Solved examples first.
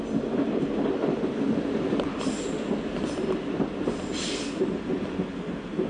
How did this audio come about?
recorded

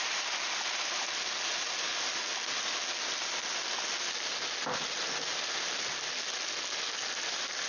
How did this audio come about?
recorded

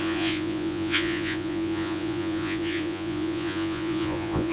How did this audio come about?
remade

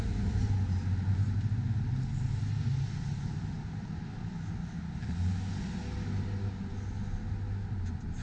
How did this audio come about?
recorded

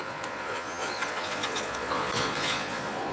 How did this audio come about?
remade